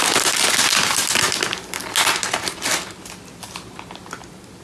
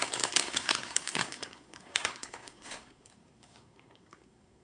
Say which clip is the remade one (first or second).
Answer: second